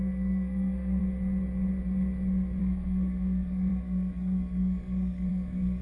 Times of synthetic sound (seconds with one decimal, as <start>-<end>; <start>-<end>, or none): 0.0-1.0; 2.6-5.8